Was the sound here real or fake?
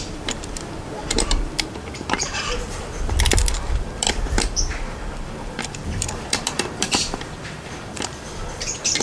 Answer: fake